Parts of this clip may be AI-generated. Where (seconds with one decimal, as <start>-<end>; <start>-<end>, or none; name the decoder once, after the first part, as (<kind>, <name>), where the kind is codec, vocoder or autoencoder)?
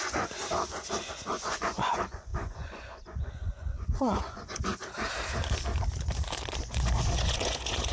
0.0-0.4 (vocoder, Vocos); 1.3-4.7; 6.6-7.9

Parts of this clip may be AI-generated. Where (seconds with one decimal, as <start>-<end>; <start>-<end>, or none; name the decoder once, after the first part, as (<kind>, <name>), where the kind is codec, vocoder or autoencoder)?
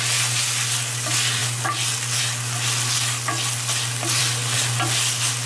none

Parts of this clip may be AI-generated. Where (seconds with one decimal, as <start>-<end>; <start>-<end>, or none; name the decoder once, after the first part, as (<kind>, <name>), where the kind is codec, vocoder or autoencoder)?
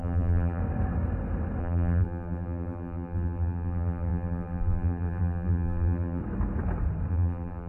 0.0-0.6 (vocoder, BigVGAN v2); 1.6-6.2; 7.1-7.7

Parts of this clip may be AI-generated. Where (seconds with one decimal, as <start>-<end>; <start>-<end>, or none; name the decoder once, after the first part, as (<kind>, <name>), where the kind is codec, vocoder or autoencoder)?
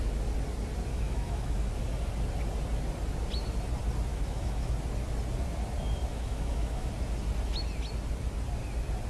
0.9-1.7 (autoencoder, DAC-VAE); 4.1-4.7; 6.1-6.9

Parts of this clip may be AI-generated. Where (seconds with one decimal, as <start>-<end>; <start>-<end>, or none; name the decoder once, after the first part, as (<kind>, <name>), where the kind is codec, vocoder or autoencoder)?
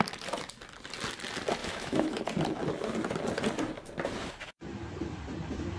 1.6-2.2 (autoencoder, DAC-VAE)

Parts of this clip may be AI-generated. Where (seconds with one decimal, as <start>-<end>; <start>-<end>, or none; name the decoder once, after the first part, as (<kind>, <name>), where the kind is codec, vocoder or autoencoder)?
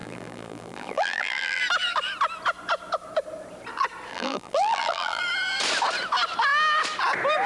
0.0-1.6 (vocoder, BigVGAN v2); 4.1-5.2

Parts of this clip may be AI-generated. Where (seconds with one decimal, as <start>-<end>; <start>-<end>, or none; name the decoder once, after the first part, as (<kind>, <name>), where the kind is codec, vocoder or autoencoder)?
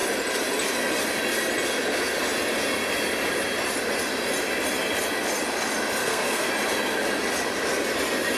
6.0-6.5 (codec, SNAC)